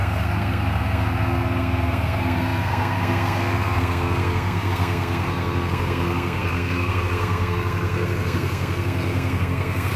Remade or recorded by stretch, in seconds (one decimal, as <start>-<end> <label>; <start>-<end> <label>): 0.0-10.0 remade